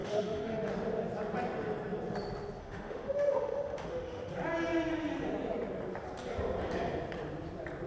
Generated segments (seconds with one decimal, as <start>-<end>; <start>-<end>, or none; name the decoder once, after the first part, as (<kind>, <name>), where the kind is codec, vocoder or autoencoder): 0.0-0.7 (autoencoder, DAC-VAE); 2.6-4.3